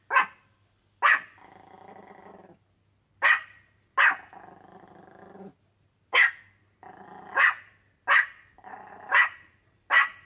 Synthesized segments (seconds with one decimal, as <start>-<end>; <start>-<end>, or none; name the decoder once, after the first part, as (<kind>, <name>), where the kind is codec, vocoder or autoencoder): none